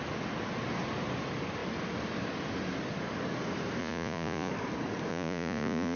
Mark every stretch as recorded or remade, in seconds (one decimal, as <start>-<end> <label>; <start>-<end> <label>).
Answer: 0.0-3.8 recorded; 3.8-4.5 remade; 4.5-5.1 recorded; 5.1-6.0 remade